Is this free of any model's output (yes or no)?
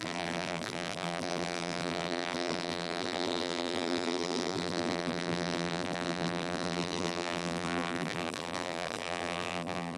no